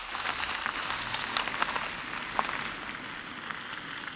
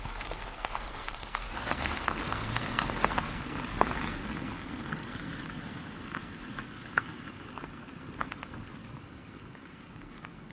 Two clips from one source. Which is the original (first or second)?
first